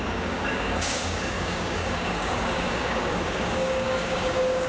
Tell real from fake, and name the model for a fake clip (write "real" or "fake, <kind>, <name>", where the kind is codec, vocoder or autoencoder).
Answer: fake, codec, DAC